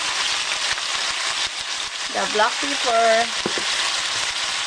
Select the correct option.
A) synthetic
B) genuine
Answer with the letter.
B